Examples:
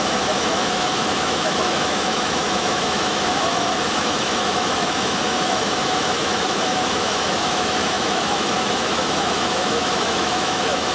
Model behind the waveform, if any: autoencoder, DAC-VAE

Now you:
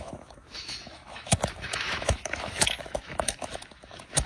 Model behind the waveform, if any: autoencoder, DAC-VAE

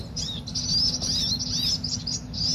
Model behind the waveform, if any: none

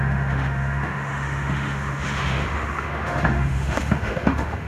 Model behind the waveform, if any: autoencoder, DAC-VAE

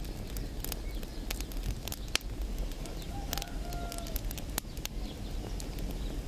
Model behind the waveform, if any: none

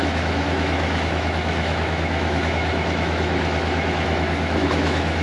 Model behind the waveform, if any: autoencoder, DAC-VAE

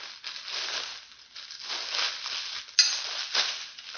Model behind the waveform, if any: none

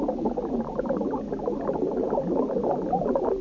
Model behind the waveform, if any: none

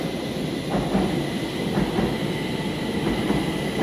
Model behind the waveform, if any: none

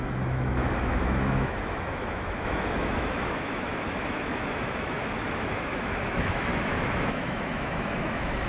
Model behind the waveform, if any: autoencoder, DAC-VAE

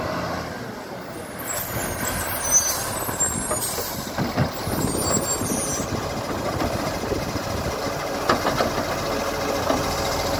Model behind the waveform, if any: none